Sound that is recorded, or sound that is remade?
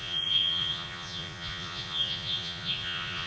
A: remade